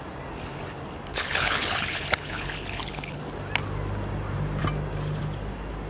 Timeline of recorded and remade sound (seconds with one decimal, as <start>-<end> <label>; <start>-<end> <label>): 0.0-1.1 recorded; 1.1-3.2 remade; 3.2-5.9 recorded